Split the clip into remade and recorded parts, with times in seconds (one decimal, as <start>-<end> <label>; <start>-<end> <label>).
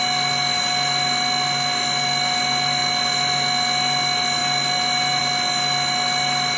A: 0.0-6.6 recorded